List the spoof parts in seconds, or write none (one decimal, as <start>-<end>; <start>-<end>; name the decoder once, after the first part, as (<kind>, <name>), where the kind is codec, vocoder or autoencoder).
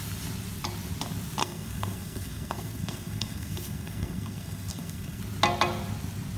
1.4-5.2 (codec, SNAC)